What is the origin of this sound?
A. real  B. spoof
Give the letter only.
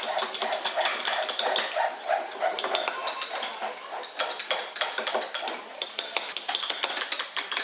A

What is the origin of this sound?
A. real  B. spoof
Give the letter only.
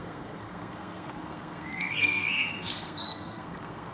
B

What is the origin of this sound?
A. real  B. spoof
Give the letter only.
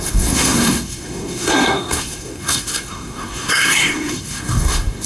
B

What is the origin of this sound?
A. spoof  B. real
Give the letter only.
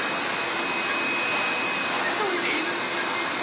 B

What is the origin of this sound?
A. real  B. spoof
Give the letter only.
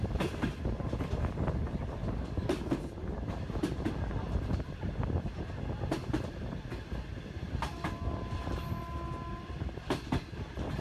A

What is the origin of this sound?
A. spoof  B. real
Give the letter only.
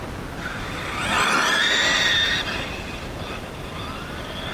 B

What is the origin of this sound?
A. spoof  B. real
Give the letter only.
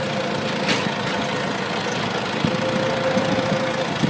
B